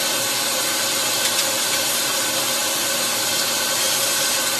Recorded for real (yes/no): yes